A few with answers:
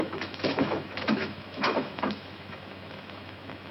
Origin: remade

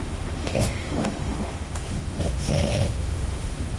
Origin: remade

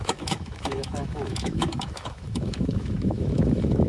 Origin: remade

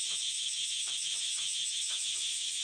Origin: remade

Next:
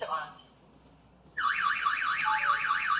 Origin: recorded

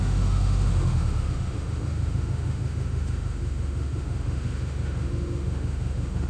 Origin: remade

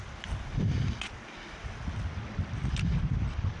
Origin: recorded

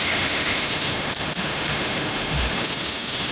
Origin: remade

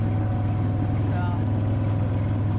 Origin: recorded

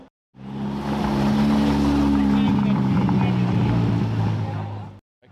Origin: recorded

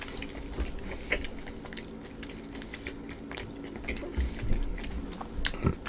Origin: recorded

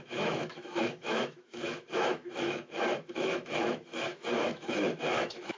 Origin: remade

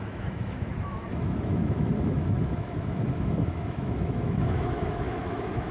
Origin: remade